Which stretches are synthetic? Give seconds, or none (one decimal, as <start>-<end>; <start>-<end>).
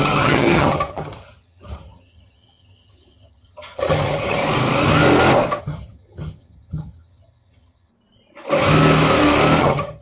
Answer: 0.0-4.4; 5.6-7.9; 9.6-10.0